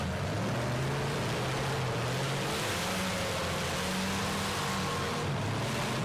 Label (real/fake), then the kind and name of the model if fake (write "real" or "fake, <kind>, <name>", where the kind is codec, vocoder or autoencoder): real